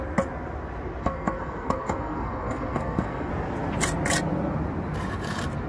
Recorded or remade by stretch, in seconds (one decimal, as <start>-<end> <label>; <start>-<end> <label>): 0.0-1.0 recorded; 1.0-3.3 remade; 3.3-5.7 recorded

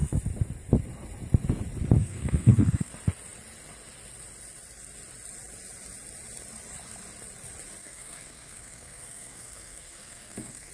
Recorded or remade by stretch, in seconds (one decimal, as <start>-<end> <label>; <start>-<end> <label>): 0.0-2.0 recorded; 2.0-2.9 remade; 2.9-7.8 recorded; 7.8-10.7 remade